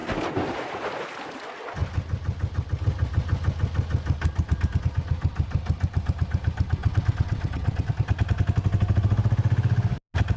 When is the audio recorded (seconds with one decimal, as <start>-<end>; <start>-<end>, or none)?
0.0-6.8; 7.9-10.4

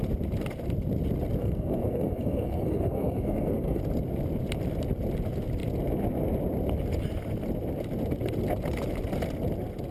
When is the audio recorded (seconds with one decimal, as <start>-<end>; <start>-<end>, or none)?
0.0-1.4; 3.8-9.9

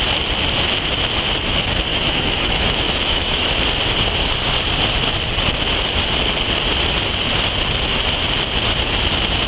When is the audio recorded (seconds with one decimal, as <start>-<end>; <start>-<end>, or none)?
0.0-1.9; 3.6-9.5

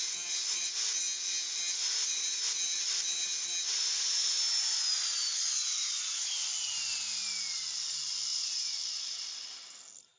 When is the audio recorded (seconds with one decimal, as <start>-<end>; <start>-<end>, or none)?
0.0-5.8; 6.5-8.3; 8.8-10.2

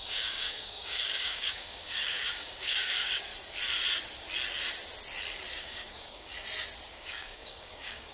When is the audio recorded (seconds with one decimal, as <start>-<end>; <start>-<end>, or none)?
3.3-5.6; 6.3-6.9

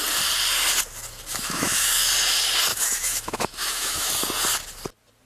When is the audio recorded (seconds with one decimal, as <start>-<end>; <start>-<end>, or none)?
0.0-1.3; 2.1-2.7; 4.1-5.3

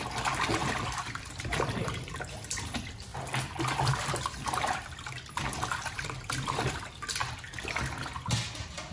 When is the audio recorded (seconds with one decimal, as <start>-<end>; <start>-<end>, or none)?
0.0-0.6; 2.1-3.1; 6.8-8.9